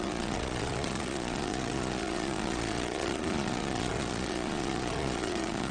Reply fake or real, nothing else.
fake